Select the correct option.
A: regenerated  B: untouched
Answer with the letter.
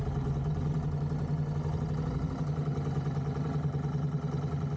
B